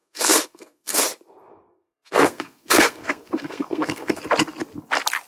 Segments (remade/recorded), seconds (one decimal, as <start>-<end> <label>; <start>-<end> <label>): 0.0-1.0 remade; 1.0-1.7 recorded; 1.7-4.2 remade; 4.2-5.3 recorded